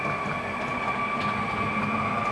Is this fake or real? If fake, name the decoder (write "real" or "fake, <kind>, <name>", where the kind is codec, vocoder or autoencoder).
real